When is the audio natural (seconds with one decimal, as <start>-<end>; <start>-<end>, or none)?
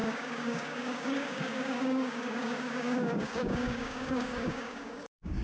none